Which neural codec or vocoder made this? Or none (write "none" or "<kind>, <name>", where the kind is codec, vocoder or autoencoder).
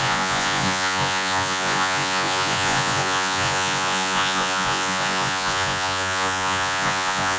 vocoder, Vocos